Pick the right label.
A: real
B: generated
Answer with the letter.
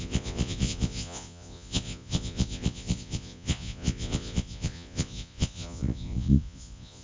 B